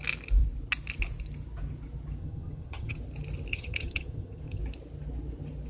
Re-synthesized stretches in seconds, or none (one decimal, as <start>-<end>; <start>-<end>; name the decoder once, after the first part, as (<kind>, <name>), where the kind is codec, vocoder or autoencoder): 2.2-3.0 (vocoder, HiFi-GAN); 3.5-4.6